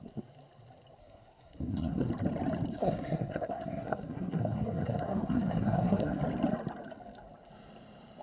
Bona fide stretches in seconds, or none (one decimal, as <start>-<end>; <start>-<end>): 0.0-1.0; 2.1-2.7; 6.2-8.2